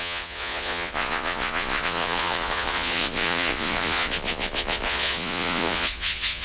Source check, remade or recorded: remade